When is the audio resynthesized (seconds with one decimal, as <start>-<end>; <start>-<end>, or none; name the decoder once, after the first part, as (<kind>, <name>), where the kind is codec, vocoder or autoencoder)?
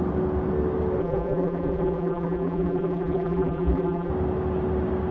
1.0-4.1 (vocoder, BigVGAN v2)